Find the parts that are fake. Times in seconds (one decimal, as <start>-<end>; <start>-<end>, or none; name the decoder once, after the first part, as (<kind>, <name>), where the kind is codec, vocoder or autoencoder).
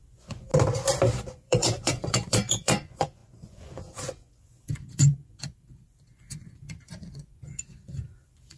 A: 0.0-0.5 (vocoder, Vocos); 1.3-8.6